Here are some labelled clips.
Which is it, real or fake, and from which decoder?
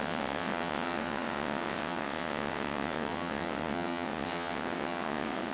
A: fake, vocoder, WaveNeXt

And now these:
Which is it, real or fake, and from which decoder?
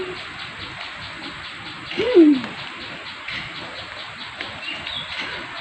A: real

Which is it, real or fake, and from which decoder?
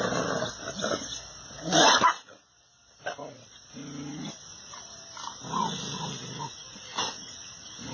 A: real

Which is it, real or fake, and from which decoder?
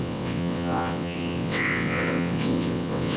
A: fake, vocoder, WaveNeXt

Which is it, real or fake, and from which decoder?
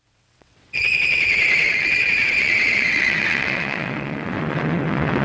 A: fake, vocoder, WaveNeXt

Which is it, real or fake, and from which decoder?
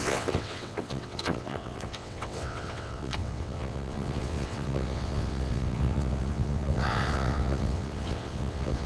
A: fake, vocoder, WaveNeXt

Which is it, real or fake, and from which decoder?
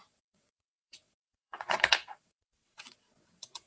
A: fake, vocoder, WaveNeXt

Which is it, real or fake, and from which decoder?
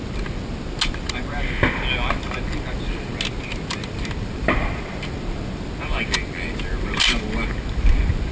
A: real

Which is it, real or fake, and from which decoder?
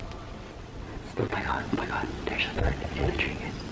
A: fake, vocoder, WaveNeXt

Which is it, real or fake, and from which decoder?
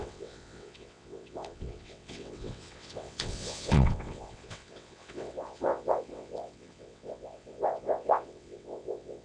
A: fake, vocoder, WaveNeXt